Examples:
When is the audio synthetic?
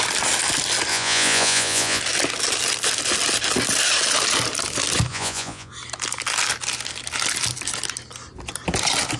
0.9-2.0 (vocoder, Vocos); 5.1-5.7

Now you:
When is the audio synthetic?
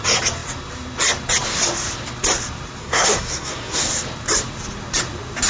2.8-3.8 (codec, SNAC)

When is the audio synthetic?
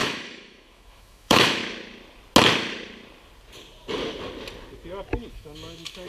0.0-1.6 (autoencoder, DAC-VAE); 5.3-6.1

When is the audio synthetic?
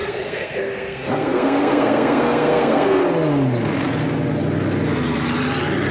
0.0-3.0 (codec, SNAC)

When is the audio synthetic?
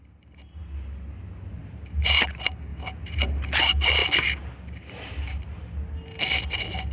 none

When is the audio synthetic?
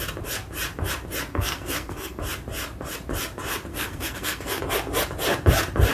1.3-2.2 (codec, SNAC); 3.7-4.6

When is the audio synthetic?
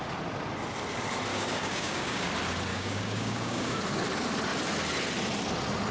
1.3-2.3 (codec, DAC); 2.7-3.8